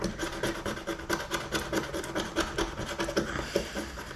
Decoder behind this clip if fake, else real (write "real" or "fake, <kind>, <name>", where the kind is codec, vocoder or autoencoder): real